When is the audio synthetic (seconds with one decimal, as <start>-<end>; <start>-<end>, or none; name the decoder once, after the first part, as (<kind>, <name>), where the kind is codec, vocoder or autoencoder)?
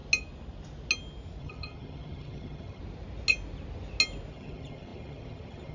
1.4-2.8 (vocoder, HiFi-GAN); 4.3-5.7